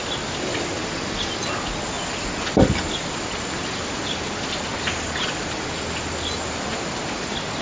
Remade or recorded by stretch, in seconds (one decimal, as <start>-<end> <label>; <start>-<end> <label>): 0.0-7.6 recorded